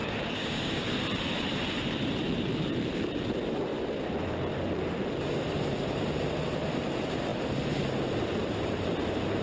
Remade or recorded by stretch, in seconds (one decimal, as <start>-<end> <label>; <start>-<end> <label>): 0.0-0.9 remade; 0.9-9.4 recorded